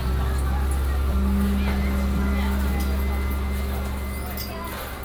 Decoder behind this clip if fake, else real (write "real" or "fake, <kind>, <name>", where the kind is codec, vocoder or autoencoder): real